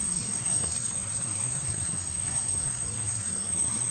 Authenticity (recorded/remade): remade